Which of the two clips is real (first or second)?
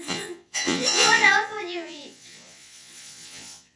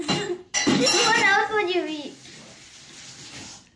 second